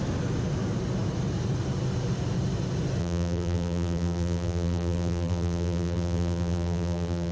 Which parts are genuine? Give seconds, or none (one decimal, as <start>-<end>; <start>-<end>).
0.0-3.0

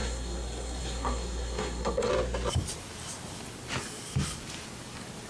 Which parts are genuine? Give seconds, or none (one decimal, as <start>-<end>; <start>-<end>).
2.1-5.3

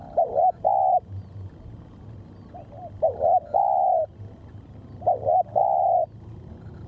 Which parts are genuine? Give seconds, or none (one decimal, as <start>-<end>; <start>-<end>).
0.0-6.9